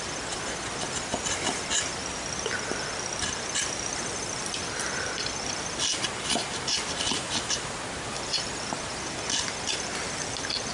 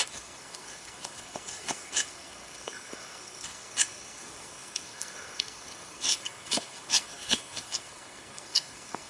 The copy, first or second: second